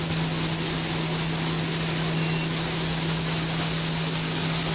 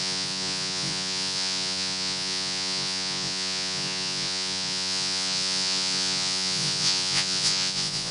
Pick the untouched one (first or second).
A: first